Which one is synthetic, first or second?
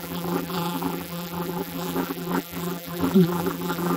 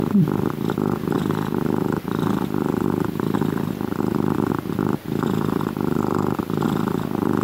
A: first